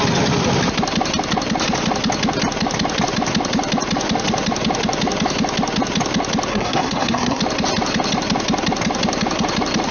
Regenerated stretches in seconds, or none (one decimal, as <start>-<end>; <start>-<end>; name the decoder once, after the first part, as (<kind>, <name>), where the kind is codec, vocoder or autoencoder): 6.5-7.4 (codec, SNAC)